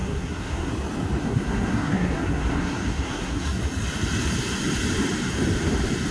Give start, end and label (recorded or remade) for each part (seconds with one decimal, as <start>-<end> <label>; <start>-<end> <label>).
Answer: 0.0-0.7 remade; 0.7-1.2 recorded; 1.2-3.6 remade; 3.6-6.1 recorded